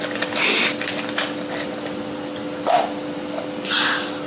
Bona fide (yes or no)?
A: yes